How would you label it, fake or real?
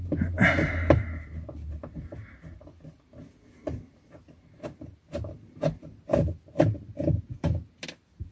real